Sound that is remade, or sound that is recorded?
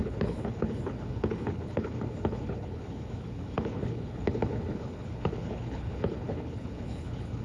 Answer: remade